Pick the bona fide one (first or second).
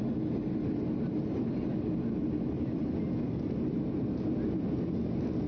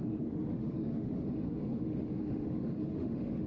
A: first